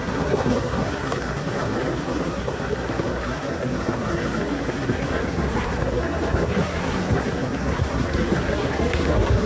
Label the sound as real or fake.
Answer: fake